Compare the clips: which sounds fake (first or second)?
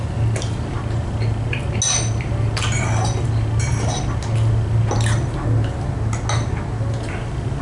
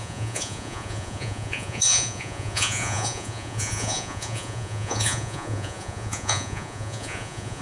second